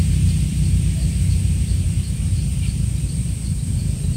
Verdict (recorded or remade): remade